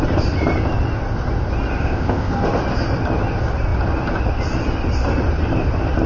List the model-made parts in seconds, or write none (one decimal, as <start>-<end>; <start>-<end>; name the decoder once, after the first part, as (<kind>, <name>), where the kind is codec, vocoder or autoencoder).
1.8-2.3 (codec, ZipCodec)